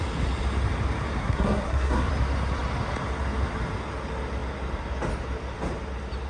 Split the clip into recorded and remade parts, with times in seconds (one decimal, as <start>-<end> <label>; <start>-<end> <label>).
0.0-1.2 recorded; 1.2-2.1 remade; 2.1-6.3 recorded